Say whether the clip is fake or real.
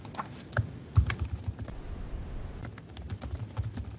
real